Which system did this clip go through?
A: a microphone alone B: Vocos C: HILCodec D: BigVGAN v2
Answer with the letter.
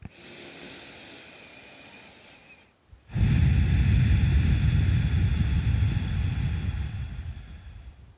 A